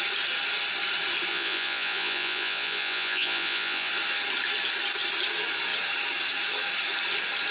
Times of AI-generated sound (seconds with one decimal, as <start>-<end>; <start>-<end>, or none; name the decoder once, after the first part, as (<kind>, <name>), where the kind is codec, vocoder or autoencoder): 1.3-3.9 (vocoder, Vocos)